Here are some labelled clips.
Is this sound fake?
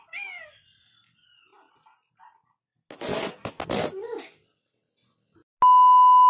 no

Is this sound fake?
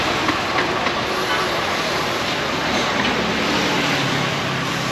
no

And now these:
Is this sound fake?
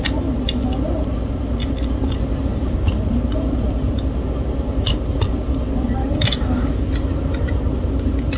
no